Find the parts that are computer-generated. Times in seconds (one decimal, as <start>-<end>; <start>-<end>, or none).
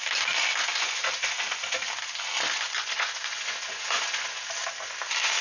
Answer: 0.7-1.9; 2.8-4.4